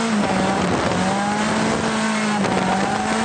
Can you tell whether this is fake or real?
real